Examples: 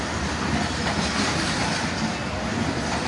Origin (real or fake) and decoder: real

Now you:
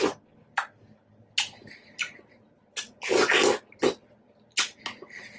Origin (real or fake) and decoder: real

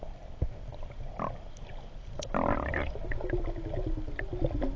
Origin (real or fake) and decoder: real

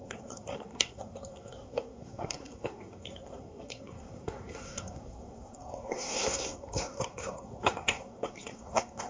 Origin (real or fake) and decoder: fake, codec, SNAC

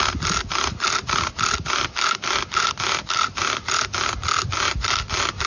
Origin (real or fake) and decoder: real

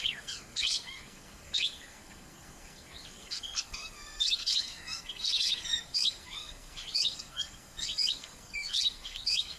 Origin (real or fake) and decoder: fake, codec, SNAC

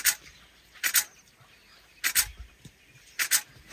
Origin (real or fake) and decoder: real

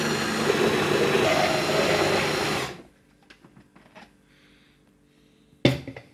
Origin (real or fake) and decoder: real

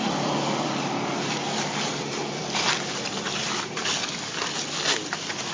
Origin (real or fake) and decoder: fake, vocoder, BigVGAN v2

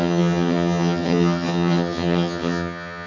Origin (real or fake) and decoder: fake, vocoder, HiFi-GAN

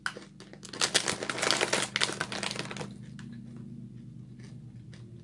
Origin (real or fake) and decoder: real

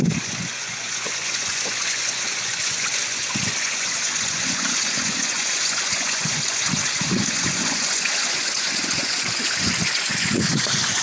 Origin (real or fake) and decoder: fake, vocoder, Vocos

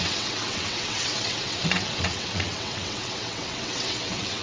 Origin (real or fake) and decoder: fake, vocoder, WaveNeXt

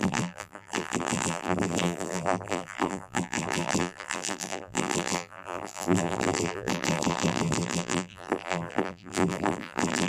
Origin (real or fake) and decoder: fake, vocoder, BigVGAN v2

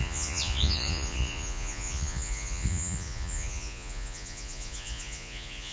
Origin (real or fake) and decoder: fake, vocoder, Vocos